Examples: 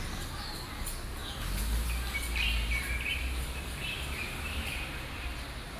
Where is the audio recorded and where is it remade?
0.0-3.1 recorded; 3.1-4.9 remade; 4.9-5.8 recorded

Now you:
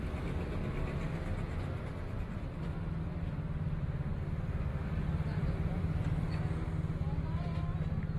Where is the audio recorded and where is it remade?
0.0-4.7 recorded; 4.7-5.8 remade; 5.8-8.2 recorded

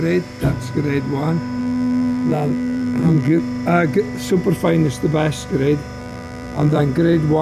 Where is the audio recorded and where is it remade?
0.0-1.6 recorded; 1.6-3.4 remade; 3.4-6.0 recorded; 6.0-6.8 remade; 6.8-7.4 recorded

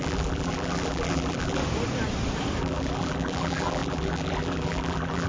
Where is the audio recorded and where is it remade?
0.0-1.6 remade; 1.6-2.6 recorded; 2.6-5.3 remade